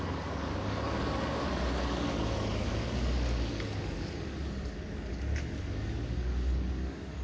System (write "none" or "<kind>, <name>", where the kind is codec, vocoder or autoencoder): codec, DAC